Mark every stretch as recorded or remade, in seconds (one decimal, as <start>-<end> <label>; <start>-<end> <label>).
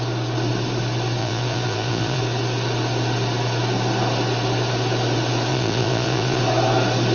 0.0-1.2 recorded; 1.2-2.2 remade; 2.2-5.5 recorded; 5.5-6.4 remade; 6.4-7.1 recorded